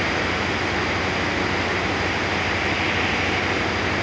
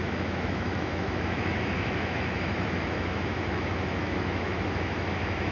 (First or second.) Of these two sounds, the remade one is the second